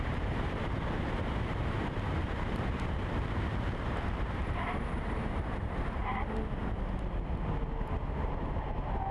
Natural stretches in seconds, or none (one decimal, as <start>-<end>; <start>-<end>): 6.0-9.1